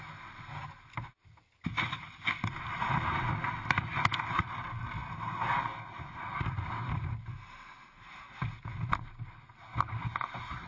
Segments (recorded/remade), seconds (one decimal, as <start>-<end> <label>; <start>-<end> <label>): 0.0-10.7 recorded